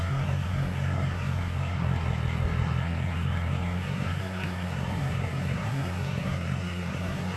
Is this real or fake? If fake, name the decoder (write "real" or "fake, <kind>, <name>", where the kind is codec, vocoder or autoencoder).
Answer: fake, codec, SNAC